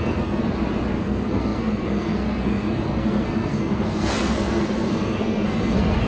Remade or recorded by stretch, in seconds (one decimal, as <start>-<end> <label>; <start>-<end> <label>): 0.0-0.4 remade; 0.4-0.9 recorded; 0.9-6.1 remade